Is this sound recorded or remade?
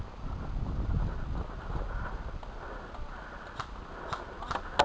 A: recorded